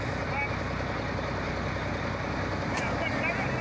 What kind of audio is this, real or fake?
real